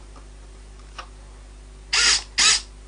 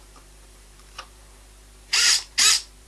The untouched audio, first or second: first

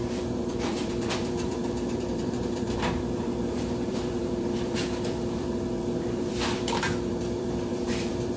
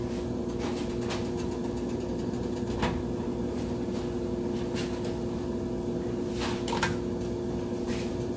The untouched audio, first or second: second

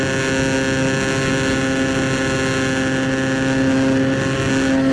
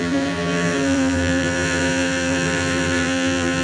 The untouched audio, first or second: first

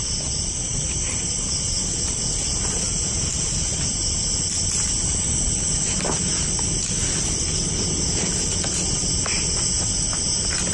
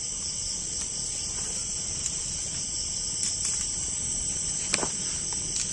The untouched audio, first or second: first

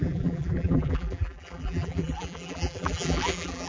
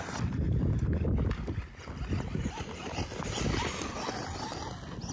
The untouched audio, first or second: second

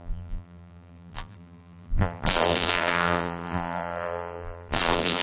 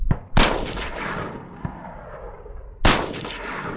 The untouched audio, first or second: second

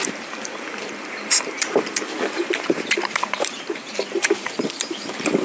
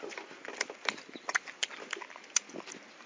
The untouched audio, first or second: second